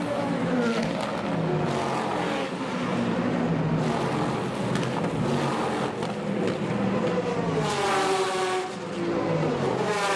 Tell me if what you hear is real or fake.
real